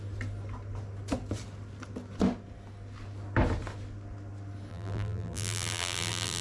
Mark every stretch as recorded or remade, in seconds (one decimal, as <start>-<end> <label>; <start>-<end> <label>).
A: 0.0-4.7 recorded; 4.7-6.4 remade